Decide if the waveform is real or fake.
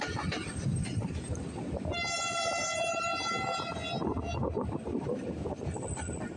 real